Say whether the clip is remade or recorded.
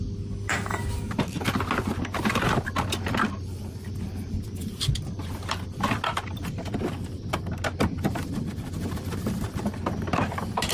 recorded